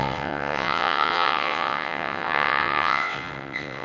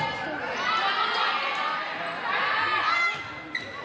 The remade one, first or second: first